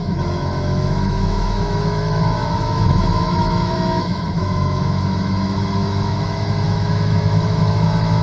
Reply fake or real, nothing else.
fake